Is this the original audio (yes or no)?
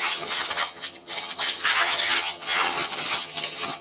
no